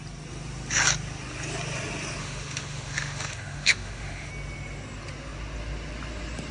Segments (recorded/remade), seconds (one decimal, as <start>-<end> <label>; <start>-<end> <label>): 0.0-2.2 recorded; 2.2-4.3 remade; 4.3-6.5 recorded